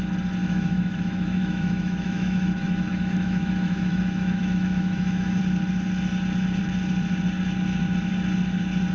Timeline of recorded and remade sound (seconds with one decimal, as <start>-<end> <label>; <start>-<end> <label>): 0.0-0.4 recorded; 0.4-5.4 remade; 5.4-8.9 recorded